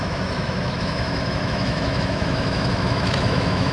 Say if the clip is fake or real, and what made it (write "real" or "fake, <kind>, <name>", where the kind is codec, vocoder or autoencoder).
fake, autoencoder, DAC-VAE